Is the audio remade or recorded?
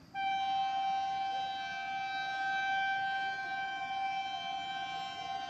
recorded